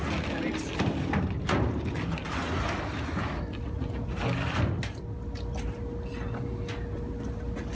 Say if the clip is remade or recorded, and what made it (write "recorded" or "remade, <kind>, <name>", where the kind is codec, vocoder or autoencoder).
recorded